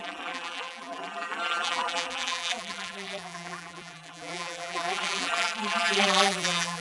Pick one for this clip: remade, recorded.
remade